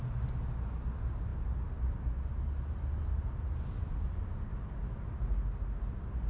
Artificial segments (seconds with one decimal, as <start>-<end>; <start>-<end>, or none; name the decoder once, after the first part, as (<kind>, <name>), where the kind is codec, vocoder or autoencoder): none